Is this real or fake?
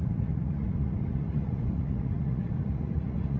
fake